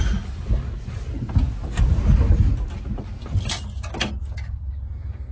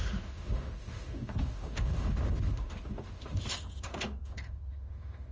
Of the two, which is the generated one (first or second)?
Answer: second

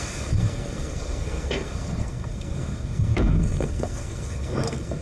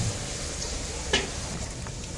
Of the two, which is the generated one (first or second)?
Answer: first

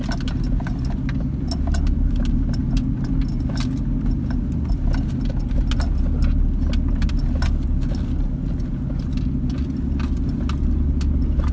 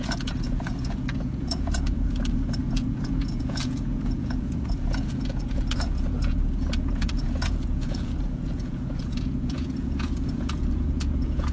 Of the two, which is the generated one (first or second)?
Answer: second